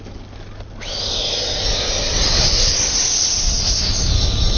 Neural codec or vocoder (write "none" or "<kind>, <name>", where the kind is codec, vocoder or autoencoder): none